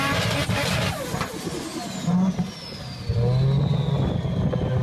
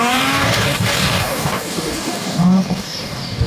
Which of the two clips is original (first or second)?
first